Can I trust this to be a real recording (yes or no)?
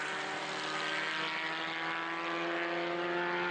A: yes